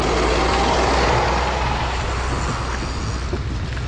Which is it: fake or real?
real